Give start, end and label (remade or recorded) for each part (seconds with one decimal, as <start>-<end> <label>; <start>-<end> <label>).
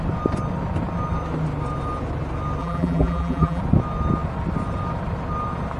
0.0-2.6 recorded; 2.6-3.6 remade; 3.6-5.8 recorded